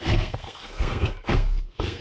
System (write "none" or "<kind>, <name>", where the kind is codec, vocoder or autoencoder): codec, SNAC